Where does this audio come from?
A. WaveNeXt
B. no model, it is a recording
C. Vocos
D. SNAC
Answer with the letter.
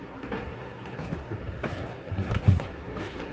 D